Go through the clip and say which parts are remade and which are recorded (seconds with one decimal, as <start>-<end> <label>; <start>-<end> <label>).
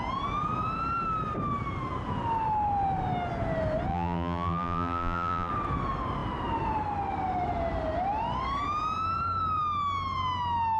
0.0-3.9 recorded; 3.9-5.5 remade; 5.5-10.8 recorded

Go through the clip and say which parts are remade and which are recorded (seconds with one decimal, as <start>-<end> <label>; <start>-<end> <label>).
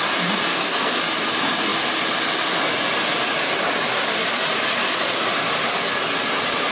0.0-0.5 recorded; 0.5-1.0 remade; 1.0-6.7 recorded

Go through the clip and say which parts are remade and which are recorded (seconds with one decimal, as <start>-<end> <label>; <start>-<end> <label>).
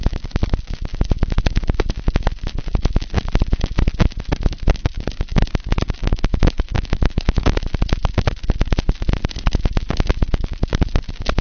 0.0-6.0 recorded; 6.0-7.6 remade; 7.6-11.4 recorded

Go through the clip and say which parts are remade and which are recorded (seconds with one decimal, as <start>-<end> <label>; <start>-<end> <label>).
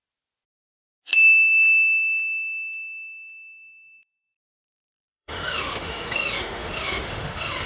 0.0-4.6 recorded; 4.6-7.7 remade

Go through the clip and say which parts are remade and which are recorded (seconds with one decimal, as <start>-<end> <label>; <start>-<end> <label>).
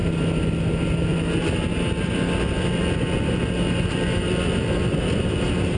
0.0-5.8 recorded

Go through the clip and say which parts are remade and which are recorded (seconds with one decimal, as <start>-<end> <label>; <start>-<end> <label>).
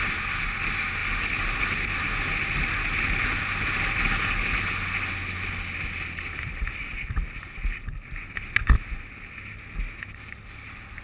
0.0-11.0 recorded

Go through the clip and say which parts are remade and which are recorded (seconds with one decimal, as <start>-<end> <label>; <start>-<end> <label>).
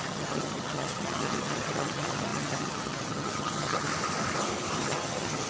0.0-3.9 remade; 3.9-4.8 recorded; 4.8-5.5 remade